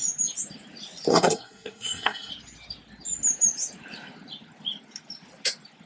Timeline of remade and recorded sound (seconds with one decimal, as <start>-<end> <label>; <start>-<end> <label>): 0.0-1.1 recorded; 1.1-2.3 remade; 2.3-5.9 recorded